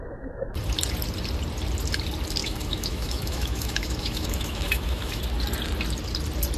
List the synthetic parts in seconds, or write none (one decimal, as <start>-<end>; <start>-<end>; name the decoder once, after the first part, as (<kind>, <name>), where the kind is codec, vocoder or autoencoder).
2.4-5.2 (autoencoder, DAC-VAE)